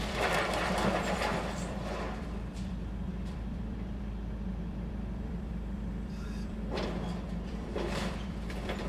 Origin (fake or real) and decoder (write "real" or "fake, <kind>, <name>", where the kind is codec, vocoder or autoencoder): fake, vocoder, BigVGAN v2